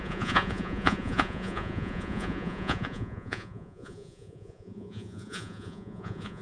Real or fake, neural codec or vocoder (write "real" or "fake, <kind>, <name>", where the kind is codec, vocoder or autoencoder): fake, vocoder, Vocos